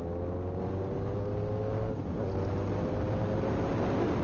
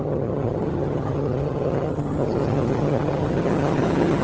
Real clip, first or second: first